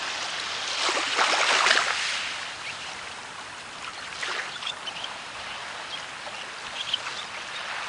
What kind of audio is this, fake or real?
real